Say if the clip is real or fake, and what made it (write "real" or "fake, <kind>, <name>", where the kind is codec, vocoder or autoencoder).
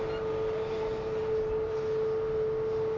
real